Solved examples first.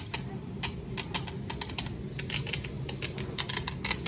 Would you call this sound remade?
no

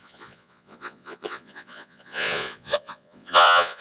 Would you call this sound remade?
yes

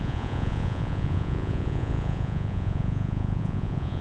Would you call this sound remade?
yes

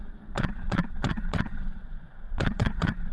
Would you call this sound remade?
yes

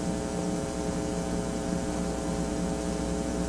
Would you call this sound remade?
no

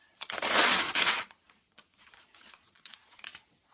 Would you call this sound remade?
yes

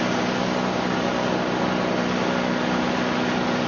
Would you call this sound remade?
no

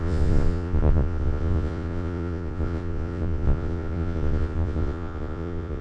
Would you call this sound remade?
yes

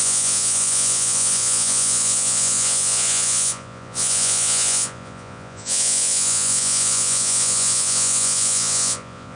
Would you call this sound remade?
yes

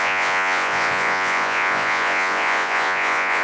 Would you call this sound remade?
yes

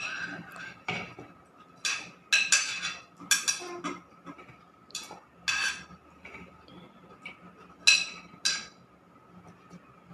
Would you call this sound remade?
no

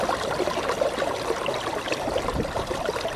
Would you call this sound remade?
no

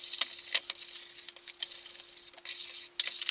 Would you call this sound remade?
no